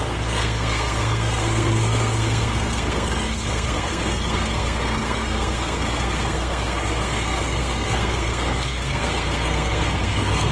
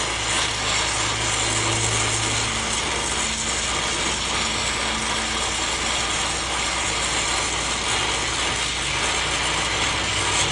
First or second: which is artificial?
first